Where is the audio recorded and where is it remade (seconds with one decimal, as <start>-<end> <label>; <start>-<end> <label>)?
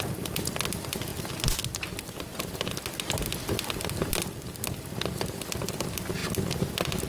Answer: 0.0-7.1 recorded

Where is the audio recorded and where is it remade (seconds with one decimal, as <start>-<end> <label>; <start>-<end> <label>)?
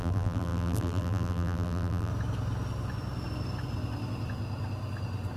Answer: 0.0-2.1 remade; 2.1-5.4 recorded